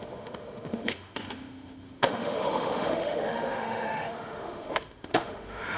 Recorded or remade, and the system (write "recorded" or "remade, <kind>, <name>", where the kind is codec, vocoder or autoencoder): remade, autoencoder, DAC-VAE